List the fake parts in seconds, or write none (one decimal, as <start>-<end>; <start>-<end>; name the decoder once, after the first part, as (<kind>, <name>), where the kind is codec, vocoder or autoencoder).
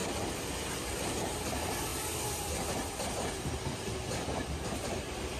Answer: 0.0-0.7 (vocoder, BigVGAN v2)